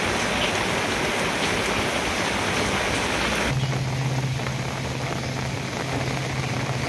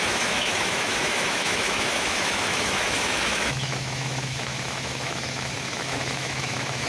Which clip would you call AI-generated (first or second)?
second